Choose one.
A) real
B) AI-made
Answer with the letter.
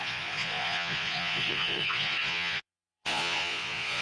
B